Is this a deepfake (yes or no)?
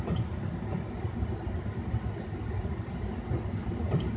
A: no